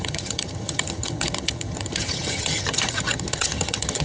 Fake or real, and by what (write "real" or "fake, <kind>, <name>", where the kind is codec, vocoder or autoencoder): fake, vocoder, HiFi-GAN